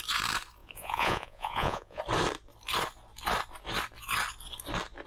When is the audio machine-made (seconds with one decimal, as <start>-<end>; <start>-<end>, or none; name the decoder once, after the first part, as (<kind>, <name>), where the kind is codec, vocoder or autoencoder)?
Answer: 0.6-2.0 (vocoder, Vocos)